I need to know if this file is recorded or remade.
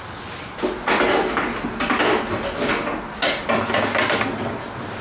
recorded